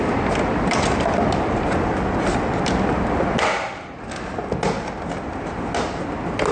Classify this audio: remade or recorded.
recorded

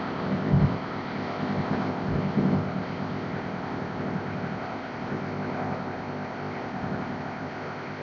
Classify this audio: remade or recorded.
remade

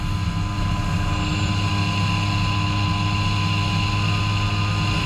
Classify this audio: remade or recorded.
recorded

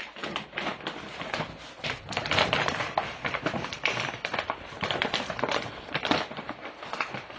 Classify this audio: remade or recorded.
remade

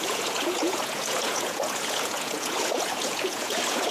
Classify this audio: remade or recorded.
remade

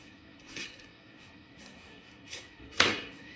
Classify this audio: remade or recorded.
remade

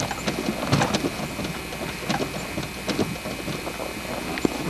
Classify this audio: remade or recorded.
recorded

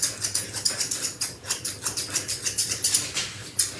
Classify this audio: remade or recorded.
recorded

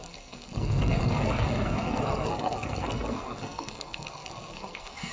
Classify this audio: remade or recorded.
remade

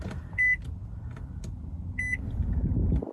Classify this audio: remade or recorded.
recorded